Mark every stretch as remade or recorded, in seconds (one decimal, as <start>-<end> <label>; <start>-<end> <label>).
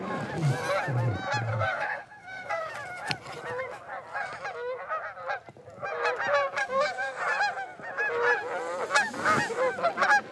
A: 0.0-1.5 recorded; 1.5-2.6 remade; 2.6-6.6 recorded; 6.6-7.2 remade; 7.2-10.3 recorded